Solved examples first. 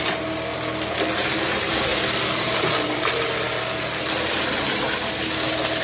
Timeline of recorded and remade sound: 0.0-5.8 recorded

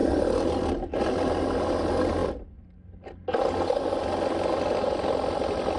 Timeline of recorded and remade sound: 0.0-0.6 remade; 0.6-5.8 recorded

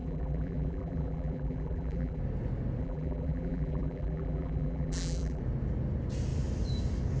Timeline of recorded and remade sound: 0.0-2.2 remade; 2.2-2.8 recorded; 2.8-5.4 remade; 5.4-7.2 recorded

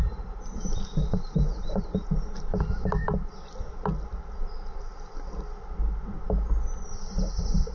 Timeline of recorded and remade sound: 0.0-2.5 remade; 2.5-6.8 recorded; 6.8-7.7 remade